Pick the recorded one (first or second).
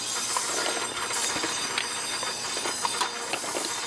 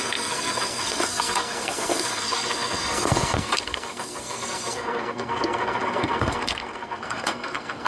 first